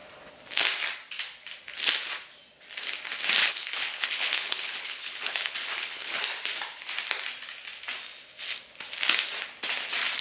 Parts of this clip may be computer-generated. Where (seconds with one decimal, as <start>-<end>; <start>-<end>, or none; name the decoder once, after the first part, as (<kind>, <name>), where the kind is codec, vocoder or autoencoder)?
3.4-6.2 (codec, HILCodec)